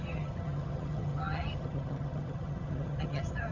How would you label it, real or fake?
fake